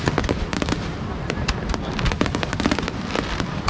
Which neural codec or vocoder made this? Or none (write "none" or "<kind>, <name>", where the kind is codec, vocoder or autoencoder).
vocoder, BigVGAN v2